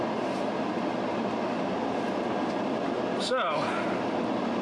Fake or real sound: real